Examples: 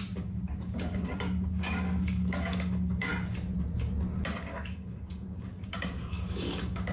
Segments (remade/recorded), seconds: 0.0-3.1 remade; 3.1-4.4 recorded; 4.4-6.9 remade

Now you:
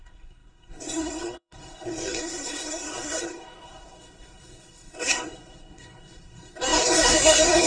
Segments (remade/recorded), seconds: 0.0-7.7 remade

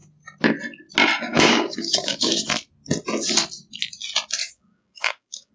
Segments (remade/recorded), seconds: 0.0-1.3 recorded; 1.3-2.3 remade; 2.3-4.4 recorded; 4.4-5.5 remade

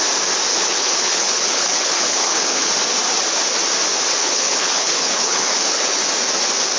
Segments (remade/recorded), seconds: 0.0-0.5 recorded; 0.5-2.7 remade; 2.7-4.2 recorded; 4.2-6.0 remade; 6.0-6.8 recorded

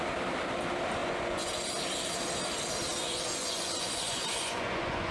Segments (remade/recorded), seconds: 0.0-1.0 recorded; 1.0-1.5 remade; 1.5-3.0 recorded; 3.0-5.1 remade

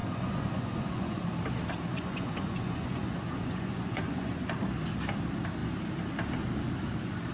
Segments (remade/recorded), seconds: 0.0-1.2 remade; 1.2-1.9 recorded; 1.9-4.5 remade; 4.5-7.3 recorded

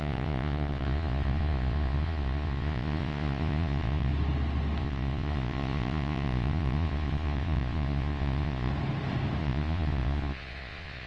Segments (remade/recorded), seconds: 0.0-4.1 remade; 4.1-4.8 recorded; 4.8-8.7 remade; 8.7-9.4 recorded; 9.4-11.1 remade

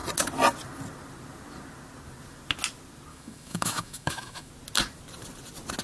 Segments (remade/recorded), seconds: 0.0-3.1 recorded; 3.1-4.5 remade; 4.5-5.8 recorded